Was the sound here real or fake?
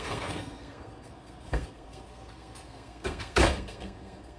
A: fake